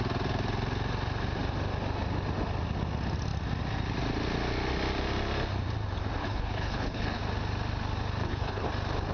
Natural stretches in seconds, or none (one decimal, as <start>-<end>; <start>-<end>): 0.0-6.2; 7.2-8.2; 8.7-9.1